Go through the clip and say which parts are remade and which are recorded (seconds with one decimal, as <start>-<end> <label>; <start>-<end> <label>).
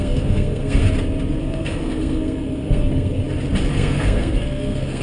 0.0-0.8 remade; 0.8-1.4 recorded; 1.4-3.2 remade; 3.2-3.7 recorded; 3.7-5.0 remade